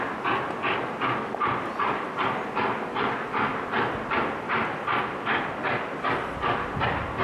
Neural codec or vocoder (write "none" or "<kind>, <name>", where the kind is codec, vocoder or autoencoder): none